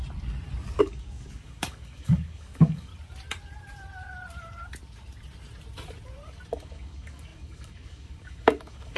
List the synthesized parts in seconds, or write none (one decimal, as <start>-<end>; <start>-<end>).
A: 0.8-2.9; 6.5-9.0